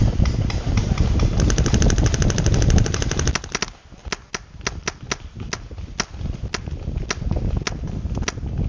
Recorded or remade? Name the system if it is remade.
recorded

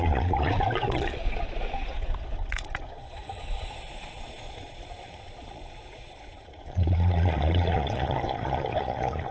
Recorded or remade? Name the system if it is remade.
remade, vocoder, Vocos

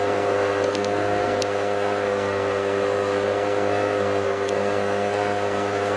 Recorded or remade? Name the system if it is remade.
remade, codec, SNAC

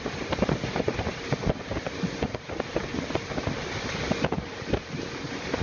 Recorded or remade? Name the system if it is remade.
recorded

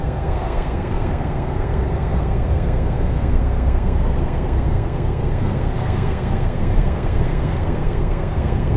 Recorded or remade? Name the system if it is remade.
remade, codec, SNAC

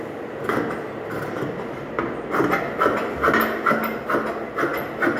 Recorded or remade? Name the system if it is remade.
recorded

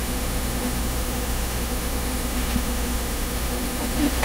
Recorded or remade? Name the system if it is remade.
remade, autoencoder, DAC-VAE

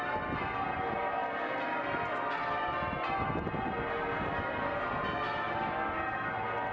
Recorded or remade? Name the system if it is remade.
recorded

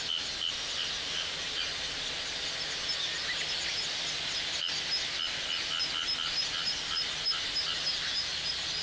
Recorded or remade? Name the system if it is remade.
recorded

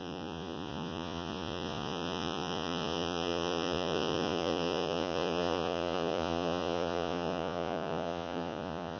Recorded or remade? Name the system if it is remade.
remade, vocoder, Vocos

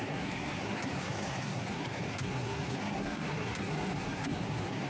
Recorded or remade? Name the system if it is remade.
remade, codec, SNAC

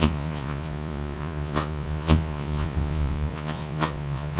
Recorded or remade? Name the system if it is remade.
remade, vocoder, Vocos